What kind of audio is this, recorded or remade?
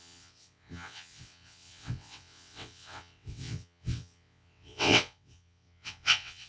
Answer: remade